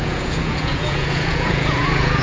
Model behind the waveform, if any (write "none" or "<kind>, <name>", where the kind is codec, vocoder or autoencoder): vocoder, Vocos